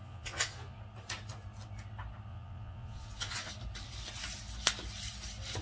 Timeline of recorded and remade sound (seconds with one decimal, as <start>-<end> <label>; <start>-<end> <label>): 0.0-0.8 remade; 0.8-2.3 recorded; 2.3-3.5 remade; 3.5-5.6 recorded